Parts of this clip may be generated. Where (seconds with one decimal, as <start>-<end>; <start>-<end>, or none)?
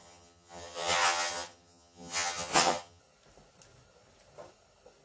0.0-3.0